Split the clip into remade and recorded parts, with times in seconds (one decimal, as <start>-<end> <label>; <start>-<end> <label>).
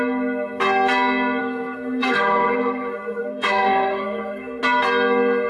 0.0-1.4 recorded; 1.4-4.6 remade; 4.6-5.5 recorded